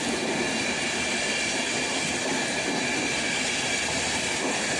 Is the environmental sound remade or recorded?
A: recorded